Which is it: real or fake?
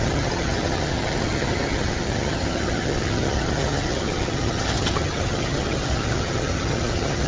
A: fake